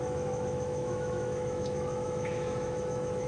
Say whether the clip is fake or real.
fake